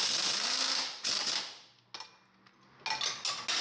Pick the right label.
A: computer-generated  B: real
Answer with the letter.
B